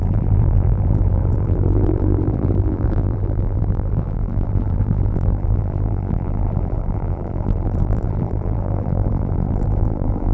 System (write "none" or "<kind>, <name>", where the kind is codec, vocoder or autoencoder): vocoder, BigVGAN v2